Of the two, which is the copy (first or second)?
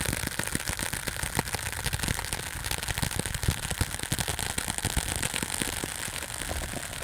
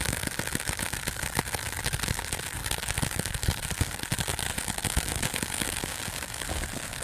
second